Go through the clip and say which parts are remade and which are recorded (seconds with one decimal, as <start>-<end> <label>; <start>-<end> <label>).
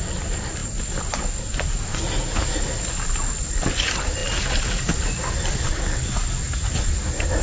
0.0-7.4 recorded